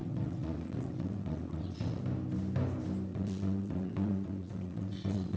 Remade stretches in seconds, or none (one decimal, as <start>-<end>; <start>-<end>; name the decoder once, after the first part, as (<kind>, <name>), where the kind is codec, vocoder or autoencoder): 0.0-2.0 (vocoder, WaveNeXt); 3.1-5.4